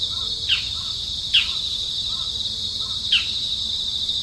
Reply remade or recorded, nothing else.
recorded